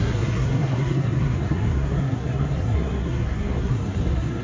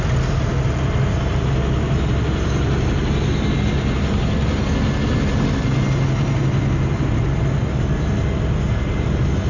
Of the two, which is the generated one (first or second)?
first